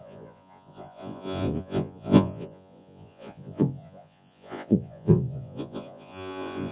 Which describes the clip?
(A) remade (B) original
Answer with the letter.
A